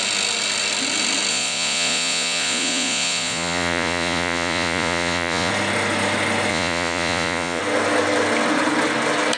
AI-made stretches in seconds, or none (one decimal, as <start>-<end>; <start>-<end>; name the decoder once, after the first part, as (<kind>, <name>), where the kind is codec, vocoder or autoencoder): 1.3-5.5 (vocoder, Vocos); 6.5-7.6

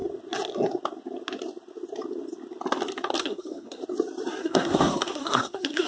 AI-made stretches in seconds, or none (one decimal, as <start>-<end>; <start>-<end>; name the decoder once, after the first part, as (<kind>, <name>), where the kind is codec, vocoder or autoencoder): 3.2-3.8 (codec, SNAC); 4.4-5.9

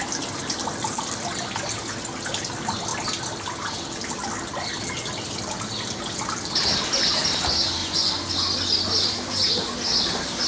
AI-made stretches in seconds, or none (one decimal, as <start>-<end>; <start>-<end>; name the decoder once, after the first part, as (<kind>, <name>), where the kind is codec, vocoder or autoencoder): 7.8-8.3 (vocoder, Vocos)